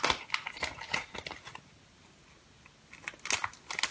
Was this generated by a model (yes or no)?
no